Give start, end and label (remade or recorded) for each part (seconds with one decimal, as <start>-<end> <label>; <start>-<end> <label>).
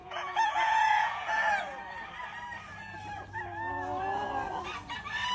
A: 0.0-1.3 remade; 1.3-5.3 recorded